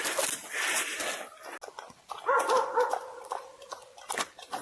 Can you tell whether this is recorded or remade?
recorded